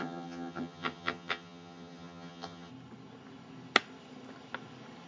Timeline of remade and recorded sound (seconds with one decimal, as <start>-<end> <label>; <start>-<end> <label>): 0.0-2.7 remade; 2.7-5.1 recorded